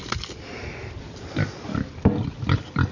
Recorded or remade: recorded